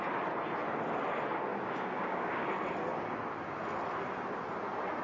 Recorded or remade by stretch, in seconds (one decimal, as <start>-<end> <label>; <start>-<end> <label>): 0.0-1.5 recorded; 1.5-2.5 remade; 2.5-5.0 recorded